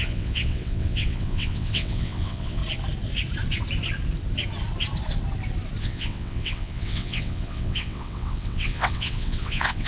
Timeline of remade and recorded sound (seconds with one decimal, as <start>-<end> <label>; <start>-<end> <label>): 0.0-2.6 remade; 2.6-5.8 recorded; 5.8-9.9 remade